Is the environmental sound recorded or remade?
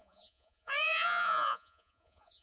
remade